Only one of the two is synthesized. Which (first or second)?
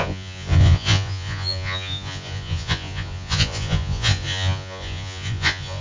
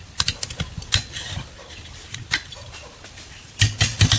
first